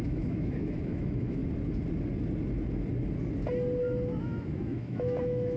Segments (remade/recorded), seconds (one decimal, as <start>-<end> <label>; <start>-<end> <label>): 0.0-1.4 remade; 1.4-4.2 recorded; 4.2-5.6 remade